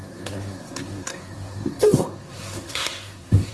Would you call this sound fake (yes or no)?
yes